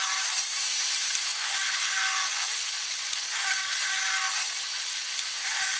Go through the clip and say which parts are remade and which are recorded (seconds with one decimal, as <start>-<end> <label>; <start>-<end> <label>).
0.0-1.3 recorded; 1.3-1.9 remade; 1.9-2.3 recorded; 2.3-3.6 remade; 3.6-5.8 recorded